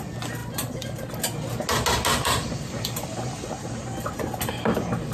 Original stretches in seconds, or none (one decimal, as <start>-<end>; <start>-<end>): 0.0-0.4; 1.1-2.1; 4.1-5.1